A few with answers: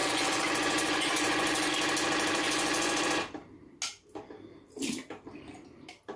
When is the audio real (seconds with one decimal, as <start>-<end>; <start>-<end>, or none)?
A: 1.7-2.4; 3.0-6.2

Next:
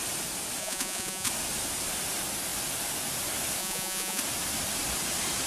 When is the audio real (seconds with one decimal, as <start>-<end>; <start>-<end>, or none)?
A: 0.0-0.6; 1.3-3.6; 4.2-5.5

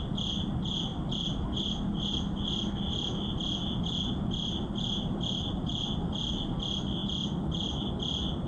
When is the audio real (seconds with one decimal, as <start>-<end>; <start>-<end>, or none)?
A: 0.0-8.5

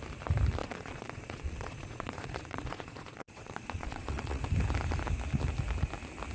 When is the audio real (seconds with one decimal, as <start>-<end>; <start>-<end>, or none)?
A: 0.0-0.6; 4.4-6.3

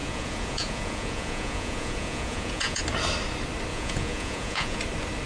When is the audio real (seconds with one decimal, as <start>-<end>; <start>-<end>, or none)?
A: 2.8-3.7; 4.8-5.3

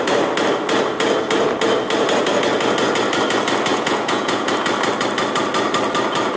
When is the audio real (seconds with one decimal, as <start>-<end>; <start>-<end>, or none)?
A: 0.0-3.7; 4.5-6.4

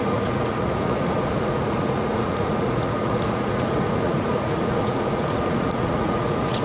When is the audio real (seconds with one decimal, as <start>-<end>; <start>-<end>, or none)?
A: none

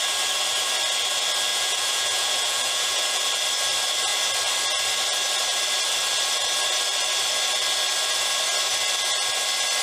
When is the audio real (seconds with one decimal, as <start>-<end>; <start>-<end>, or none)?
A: 0.0-1.5; 3.2-9.8